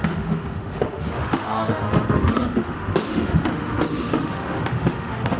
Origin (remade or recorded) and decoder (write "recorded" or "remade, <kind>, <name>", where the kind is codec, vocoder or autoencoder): remade, autoencoder, DAC-VAE